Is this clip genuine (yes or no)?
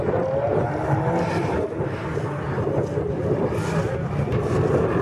yes